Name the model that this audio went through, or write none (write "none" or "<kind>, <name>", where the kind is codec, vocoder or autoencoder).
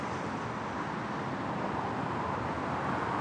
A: none